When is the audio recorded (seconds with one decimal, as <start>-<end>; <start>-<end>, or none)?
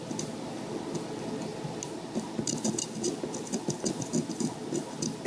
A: 0.0-5.3